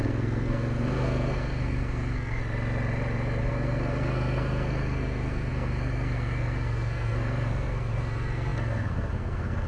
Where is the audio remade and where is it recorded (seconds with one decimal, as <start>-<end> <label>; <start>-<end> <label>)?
0.0-2.4 remade; 2.4-3.4 recorded; 3.4-9.7 remade